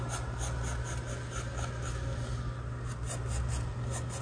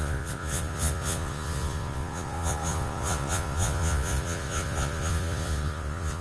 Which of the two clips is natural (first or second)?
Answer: first